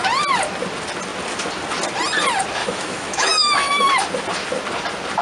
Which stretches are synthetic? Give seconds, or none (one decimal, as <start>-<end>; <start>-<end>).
2.6-3.9